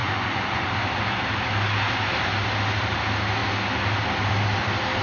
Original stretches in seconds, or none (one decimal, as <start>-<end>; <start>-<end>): 0.7-5.0